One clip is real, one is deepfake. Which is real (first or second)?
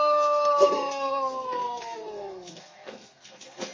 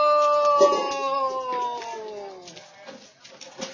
second